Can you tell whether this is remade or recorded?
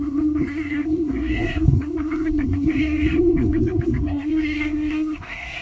remade